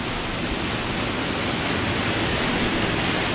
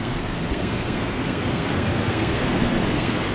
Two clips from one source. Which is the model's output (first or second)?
second